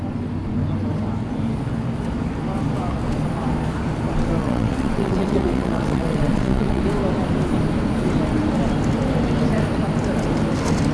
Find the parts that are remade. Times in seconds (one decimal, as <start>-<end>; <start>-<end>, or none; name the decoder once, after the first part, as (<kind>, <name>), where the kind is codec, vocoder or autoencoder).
4.4-6.8 (vocoder, WaveNeXt)